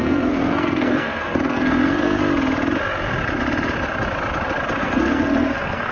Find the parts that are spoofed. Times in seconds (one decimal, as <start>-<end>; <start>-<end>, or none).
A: 0.0-2.2; 4.8-5.9